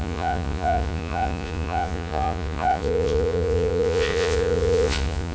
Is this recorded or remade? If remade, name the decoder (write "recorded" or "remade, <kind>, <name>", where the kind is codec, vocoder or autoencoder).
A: remade, vocoder, Vocos